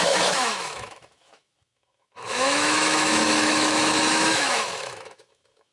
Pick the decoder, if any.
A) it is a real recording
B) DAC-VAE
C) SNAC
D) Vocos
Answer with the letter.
B